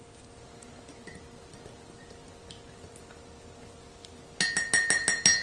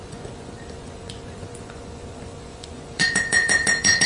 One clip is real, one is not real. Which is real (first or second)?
first